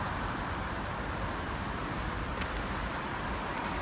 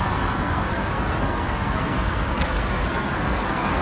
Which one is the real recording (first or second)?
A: first